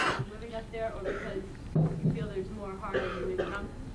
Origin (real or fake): real